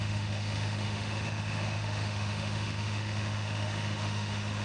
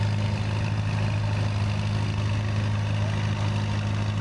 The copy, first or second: first